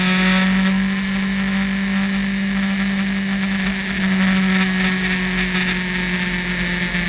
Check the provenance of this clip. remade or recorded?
recorded